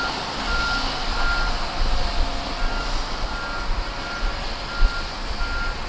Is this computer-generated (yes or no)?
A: no